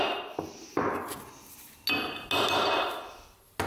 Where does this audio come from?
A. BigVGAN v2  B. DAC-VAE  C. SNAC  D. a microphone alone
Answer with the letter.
D